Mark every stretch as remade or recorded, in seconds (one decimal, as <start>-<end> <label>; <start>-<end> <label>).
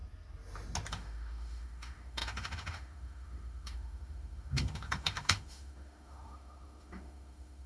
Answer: 0.0-0.9 recorded; 0.9-7.7 remade